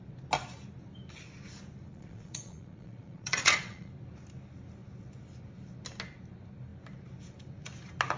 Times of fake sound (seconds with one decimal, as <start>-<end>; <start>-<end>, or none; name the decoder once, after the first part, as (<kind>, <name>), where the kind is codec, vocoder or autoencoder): 1.9-3.9 (vocoder, Vocos)

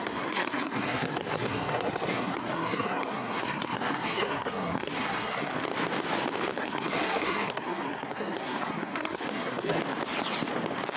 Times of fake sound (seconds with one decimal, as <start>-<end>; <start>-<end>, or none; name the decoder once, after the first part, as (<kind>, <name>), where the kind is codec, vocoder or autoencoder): 0.0-5.5 (codec, SNAC); 6.5-9.8

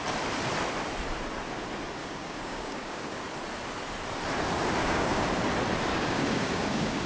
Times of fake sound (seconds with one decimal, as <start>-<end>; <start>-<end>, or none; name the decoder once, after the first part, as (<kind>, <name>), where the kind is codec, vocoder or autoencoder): 2.0-3.2 (codec, DAC); 4.8-5.3; 5.9-7.1

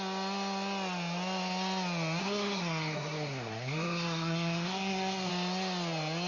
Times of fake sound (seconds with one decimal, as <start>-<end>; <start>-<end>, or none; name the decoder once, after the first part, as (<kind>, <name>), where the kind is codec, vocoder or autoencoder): 2.2-5.3 (codec, SNAC)

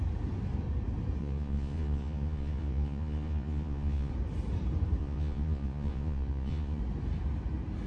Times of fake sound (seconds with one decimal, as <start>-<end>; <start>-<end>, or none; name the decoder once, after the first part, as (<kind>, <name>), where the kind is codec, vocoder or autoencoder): 1.2-4.1 (vocoder, Vocos); 5.0-6.8

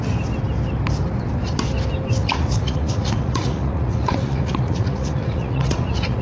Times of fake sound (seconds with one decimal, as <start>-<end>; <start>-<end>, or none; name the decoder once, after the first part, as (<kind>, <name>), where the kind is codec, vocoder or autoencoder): 2.2-6.2 (vocoder, Vocos)